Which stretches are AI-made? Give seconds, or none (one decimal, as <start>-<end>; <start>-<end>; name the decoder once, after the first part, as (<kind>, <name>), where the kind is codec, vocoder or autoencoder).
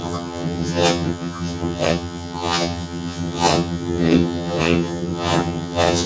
0.0-6.1 (vocoder, HiFi-GAN)